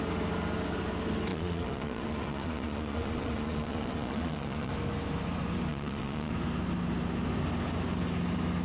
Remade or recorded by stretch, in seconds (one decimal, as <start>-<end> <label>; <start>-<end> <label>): 0.0-1.3 recorded; 1.3-4.7 remade; 4.7-5.7 recorded; 5.7-6.3 remade; 6.3-8.6 recorded

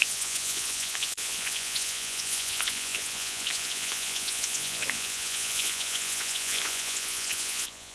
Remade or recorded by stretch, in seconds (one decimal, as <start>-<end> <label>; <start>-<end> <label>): 0.0-7.9 remade

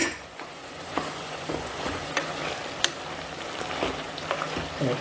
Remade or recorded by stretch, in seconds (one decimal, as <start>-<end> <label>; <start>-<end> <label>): 0.0-2.4 remade; 2.4-5.0 recorded

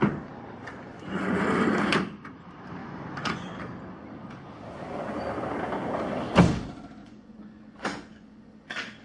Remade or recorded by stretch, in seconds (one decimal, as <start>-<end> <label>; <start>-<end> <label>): 0.0-0.9 recorded; 0.9-1.4 remade; 1.4-2.8 recorded; 2.8-3.6 remade; 3.6-7.0 recorded; 7.0-8.5 remade; 8.5-9.0 recorded

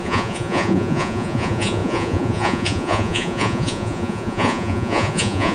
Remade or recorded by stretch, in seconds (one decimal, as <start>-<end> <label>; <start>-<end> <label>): 0.0-5.5 remade